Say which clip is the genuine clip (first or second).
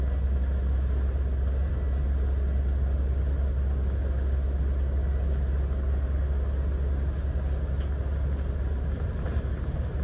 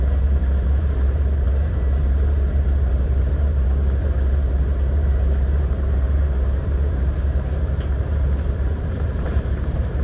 first